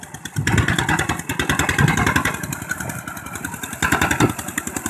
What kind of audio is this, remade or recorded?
recorded